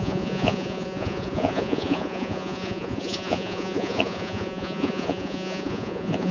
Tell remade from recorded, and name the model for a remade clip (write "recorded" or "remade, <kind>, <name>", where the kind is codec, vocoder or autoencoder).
remade, vocoder, Vocos